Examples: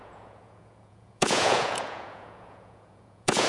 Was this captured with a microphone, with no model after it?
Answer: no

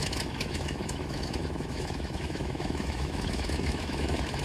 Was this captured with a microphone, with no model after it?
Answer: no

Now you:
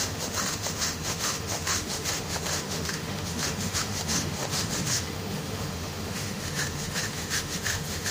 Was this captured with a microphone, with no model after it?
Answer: no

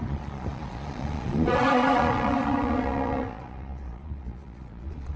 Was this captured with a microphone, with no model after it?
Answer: no